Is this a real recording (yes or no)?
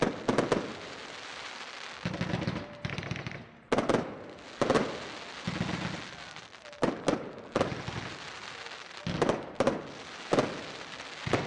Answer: yes